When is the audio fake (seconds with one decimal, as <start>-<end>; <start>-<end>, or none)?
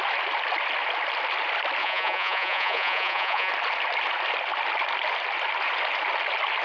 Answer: 1.8-3.5